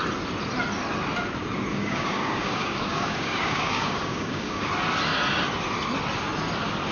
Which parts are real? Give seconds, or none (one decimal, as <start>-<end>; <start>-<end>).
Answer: 0.0-1.7; 4.7-6.9